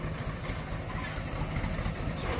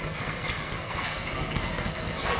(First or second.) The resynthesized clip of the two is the second